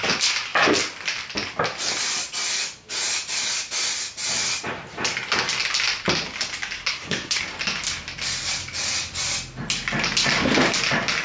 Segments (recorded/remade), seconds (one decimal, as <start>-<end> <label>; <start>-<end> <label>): 0.0-6.9 recorded; 6.9-7.4 remade; 7.4-11.2 recorded